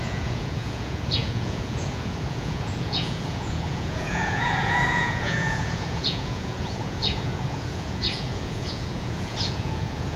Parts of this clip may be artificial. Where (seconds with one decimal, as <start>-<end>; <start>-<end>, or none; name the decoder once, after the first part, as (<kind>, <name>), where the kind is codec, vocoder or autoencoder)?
0.0-10.2 (vocoder, Vocos)